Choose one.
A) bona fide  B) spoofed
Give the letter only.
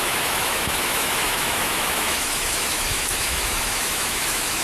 B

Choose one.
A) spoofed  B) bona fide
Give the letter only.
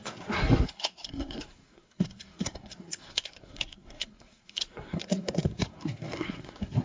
A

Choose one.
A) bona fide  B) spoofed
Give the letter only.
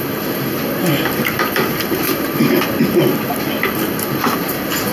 B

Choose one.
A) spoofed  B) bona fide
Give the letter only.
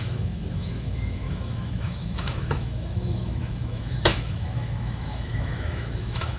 A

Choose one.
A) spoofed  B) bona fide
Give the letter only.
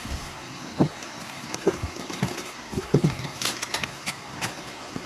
A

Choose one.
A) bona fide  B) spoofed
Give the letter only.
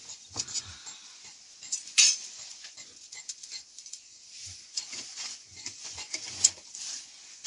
B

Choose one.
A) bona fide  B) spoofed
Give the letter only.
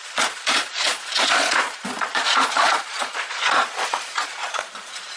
B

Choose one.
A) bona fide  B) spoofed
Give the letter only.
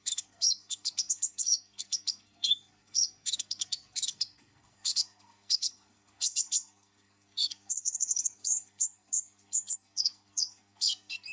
B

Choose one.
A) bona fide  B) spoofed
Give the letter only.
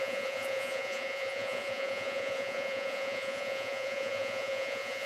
B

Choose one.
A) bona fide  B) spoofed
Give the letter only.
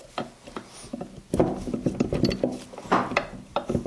A